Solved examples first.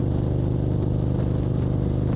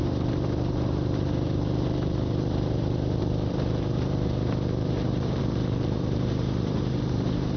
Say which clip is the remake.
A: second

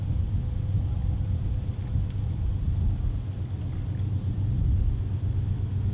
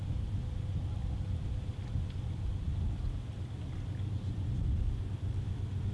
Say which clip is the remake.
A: second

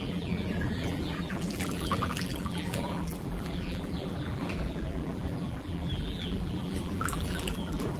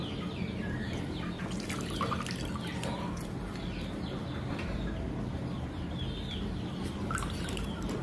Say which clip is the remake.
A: first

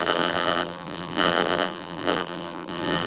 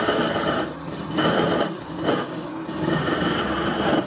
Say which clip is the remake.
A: first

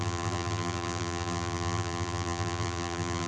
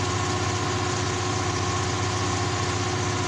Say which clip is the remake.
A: first